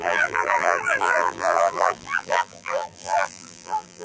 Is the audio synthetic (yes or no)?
yes